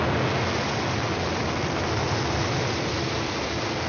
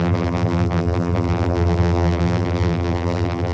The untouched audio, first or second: first